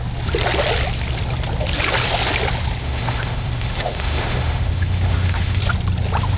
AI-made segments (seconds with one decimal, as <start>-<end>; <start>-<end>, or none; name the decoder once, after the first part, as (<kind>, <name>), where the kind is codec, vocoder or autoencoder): 2.8-5.6 (autoencoder, DAC-VAE)